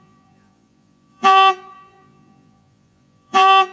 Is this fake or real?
fake